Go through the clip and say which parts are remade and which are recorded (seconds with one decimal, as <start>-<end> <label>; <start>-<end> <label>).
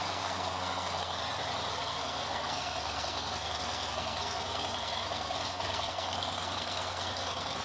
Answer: 0.0-1.2 remade; 1.2-1.7 recorded; 1.7-7.6 remade